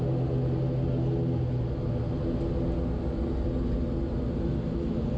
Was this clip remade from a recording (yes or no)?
no